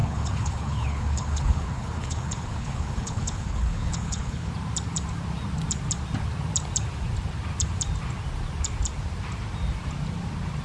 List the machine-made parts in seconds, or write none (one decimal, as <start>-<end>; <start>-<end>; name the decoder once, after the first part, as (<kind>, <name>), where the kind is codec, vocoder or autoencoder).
0.0-4.5 (codec, HILCodec)